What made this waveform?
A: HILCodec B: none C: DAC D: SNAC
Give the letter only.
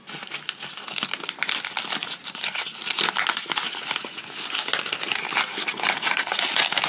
B